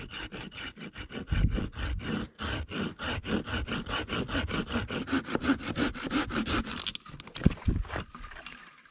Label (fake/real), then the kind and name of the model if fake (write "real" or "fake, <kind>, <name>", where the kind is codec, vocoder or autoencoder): real